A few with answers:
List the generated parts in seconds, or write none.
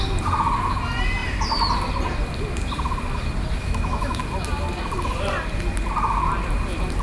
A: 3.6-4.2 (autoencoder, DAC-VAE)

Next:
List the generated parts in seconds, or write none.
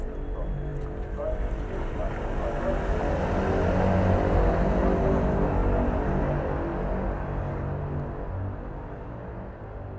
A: none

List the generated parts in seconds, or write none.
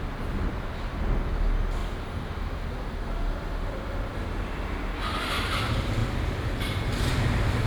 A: none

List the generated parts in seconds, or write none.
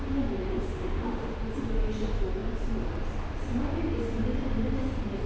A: 0.5-1.4 (autoencoder, DAC-VAE)